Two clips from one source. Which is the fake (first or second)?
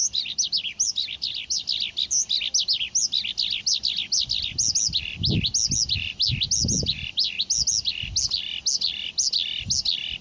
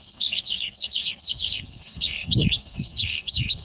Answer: second